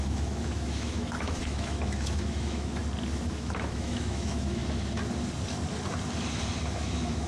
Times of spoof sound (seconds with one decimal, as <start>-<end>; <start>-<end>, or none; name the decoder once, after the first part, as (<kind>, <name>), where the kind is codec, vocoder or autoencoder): 0.0-2.8 (autoencoder, DAC-VAE); 3.3-4.6; 6.7-7.3